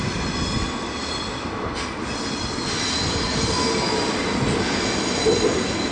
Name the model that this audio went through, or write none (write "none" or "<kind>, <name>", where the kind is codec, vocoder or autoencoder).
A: none